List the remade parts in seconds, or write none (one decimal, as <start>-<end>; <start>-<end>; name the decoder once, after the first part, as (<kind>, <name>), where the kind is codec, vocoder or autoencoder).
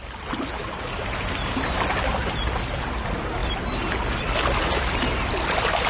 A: none